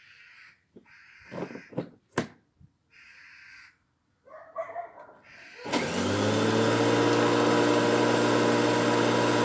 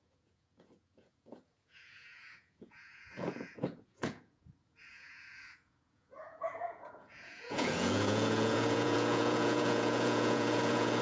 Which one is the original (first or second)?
first